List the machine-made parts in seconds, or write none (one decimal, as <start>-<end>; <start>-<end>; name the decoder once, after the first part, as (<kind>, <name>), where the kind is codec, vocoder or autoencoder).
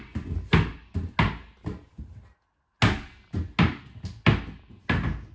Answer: none